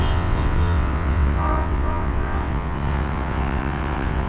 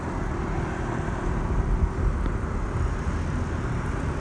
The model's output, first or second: first